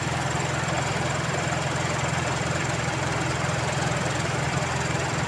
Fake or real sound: fake